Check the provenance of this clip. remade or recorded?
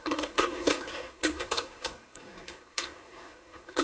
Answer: remade